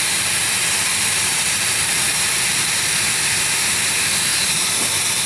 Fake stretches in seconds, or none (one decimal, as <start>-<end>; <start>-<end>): 0.9-2.4; 4.3-4.8